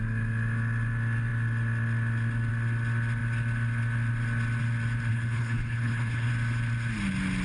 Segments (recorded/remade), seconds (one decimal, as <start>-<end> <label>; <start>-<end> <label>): 0.0-5.1 recorded; 5.1-6.3 remade; 6.3-7.4 recorded